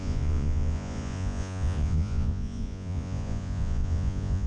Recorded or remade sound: remade